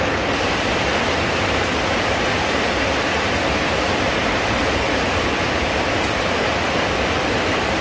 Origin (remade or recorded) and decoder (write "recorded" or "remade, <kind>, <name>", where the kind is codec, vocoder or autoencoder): recorded